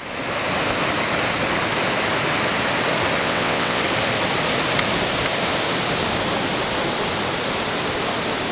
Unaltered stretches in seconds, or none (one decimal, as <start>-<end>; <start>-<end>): 0.0-3.2; 3.8-8.5